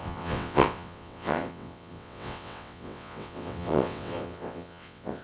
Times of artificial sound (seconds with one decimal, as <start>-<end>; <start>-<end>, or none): 0.0-5.2